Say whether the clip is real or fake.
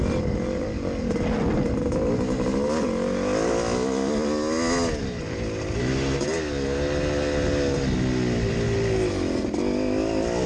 real